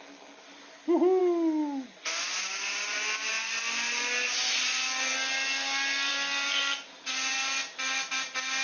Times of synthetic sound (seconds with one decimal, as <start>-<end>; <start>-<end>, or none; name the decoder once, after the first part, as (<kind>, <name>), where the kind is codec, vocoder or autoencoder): none